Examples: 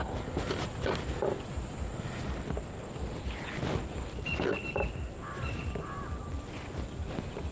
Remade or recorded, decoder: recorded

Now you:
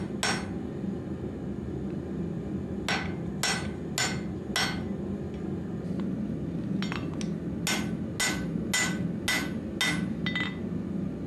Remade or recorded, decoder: recorded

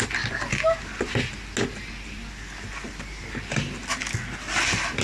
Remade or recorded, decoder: recorded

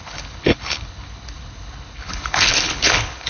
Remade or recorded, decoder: remade, codec, HILCodec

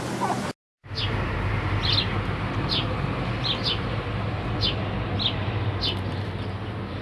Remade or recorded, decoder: recorded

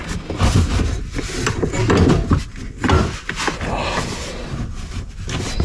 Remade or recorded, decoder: recorded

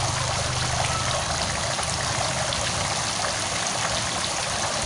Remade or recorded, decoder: recorded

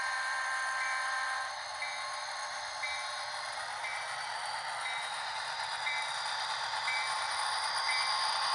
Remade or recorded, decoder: remade, vocoder, BigVGAN v2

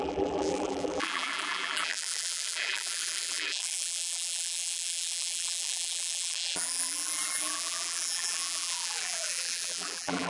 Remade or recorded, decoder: remade, vocoder, BigVGAN v2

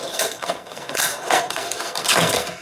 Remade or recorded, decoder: remade, codec, SNAC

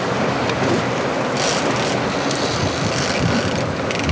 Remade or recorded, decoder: recorded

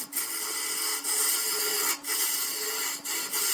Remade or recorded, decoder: recorded